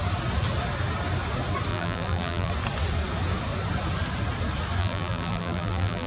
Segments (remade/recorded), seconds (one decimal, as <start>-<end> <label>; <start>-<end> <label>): 0.0-1.7 recorded; 1.7-2.5 remade; 2.5-4.8 recorded; 4.8-6.1 remade